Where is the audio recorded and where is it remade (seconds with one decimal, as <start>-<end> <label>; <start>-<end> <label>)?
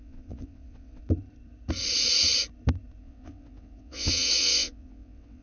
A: 0.0-1.0 remade; 1.0-3.0 recorded; 3.0-5.4 remade